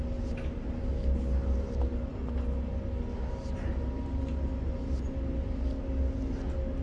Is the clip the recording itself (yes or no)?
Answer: yes